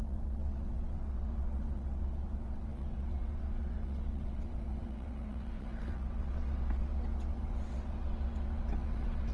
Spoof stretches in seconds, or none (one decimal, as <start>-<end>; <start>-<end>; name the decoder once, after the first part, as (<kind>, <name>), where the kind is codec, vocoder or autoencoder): 0.0-9.3 (vocoder, WaveNeXt)